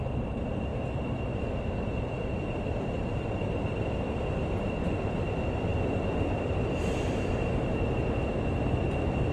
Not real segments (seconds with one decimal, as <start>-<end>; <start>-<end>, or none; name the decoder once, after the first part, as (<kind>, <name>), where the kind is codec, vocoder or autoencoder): 1.9-4.6 (vocoder, BigVGAN v2); 5.7-7.3